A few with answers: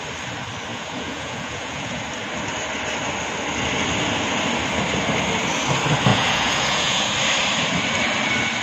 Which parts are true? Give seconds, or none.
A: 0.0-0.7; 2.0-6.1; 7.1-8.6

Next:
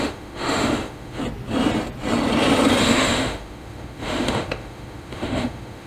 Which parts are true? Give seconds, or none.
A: 1.2-2.8

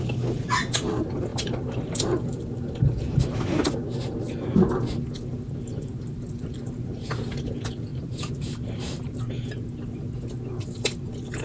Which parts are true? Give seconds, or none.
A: 0.0-1.3; 3.7-5.3; 7.3-7.9; 9.2-11.4

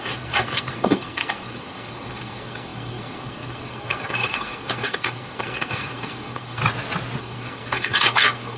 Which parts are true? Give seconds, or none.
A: 6.6-7.2